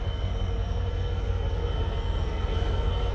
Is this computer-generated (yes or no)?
yes